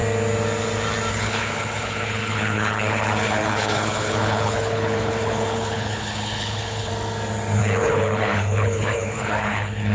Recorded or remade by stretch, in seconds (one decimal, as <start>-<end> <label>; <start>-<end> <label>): 0.0-1.1 recorded; 1.1-6.9 remade; 6.9-7.6 recorded; 7.6-9.9 remade